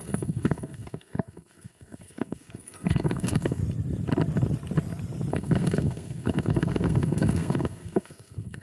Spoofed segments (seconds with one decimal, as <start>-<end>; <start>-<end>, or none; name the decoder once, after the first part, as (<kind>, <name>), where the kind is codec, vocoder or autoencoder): 0.0-3.6 (codec, SNAC); 5.3-8.6